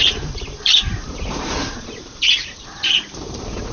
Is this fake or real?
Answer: fake